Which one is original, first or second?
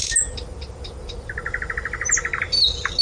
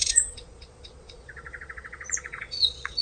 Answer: first